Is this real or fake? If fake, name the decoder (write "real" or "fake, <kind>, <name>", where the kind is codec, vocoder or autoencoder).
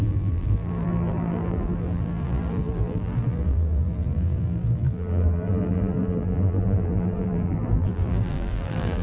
fake, vocoder, BigVGAN v2